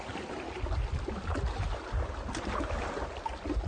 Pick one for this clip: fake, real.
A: real